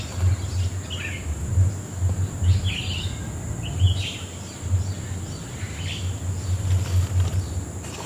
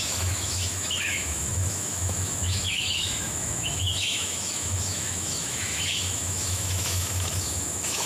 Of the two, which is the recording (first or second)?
first